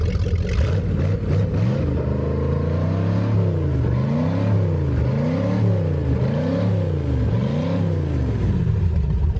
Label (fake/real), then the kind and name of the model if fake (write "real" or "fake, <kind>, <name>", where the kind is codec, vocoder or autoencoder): real